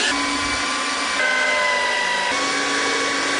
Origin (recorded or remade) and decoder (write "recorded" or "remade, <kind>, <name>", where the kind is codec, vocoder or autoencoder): recorded